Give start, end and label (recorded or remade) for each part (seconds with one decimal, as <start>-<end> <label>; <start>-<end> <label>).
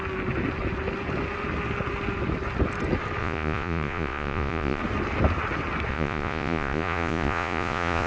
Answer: 0.0-3.2 recorded; 3.2-4.8 remade; 4.8-5.9 recorded; 5.9-8.1 remade